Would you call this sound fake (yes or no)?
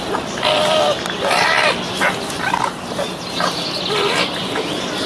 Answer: no